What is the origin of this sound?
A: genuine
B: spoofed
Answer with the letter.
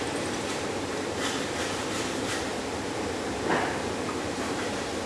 A